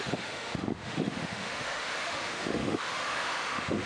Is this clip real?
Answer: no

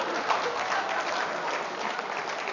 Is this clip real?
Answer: yes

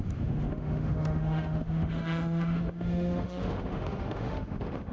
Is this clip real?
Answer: no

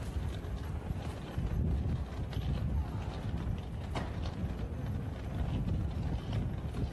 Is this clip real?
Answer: yes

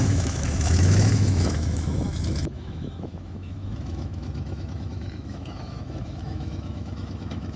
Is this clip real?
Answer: no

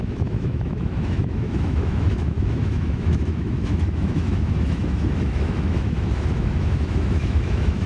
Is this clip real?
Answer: no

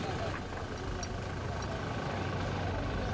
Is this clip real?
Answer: yes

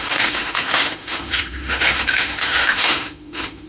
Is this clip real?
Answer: no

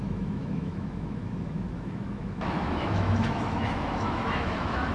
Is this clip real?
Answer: no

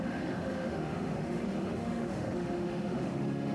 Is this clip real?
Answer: no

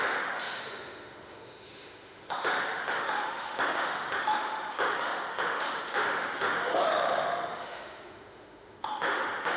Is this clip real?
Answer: no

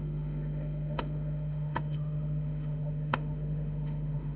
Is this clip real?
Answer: no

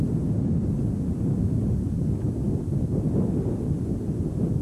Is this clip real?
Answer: yes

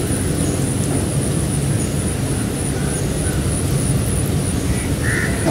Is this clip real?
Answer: yes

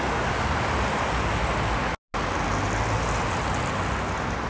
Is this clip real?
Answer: yes